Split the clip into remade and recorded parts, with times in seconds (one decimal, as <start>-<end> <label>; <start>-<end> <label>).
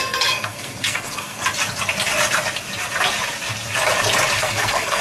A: 0.0-1.4 remade; 1.4-4.4 recorded; 4.4-5.0 remade